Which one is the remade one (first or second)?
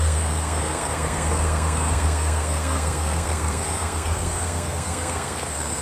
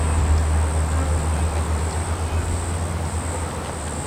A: first